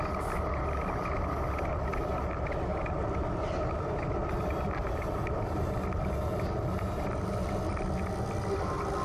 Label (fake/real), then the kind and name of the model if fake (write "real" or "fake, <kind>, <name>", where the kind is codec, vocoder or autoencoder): real